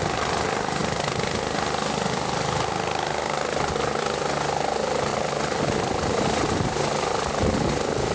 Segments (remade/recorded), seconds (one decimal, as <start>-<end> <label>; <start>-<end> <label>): 0.0-8.1 recorded